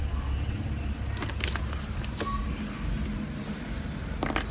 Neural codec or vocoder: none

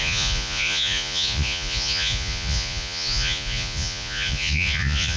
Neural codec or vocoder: vocoder, Vocos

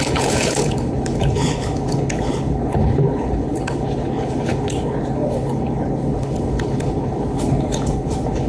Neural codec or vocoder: codec, HILCodec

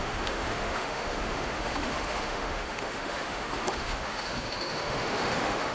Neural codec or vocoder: autoencoder, DAC-VAE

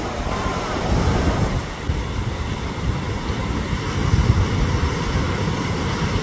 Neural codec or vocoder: none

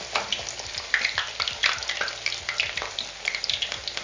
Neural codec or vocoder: none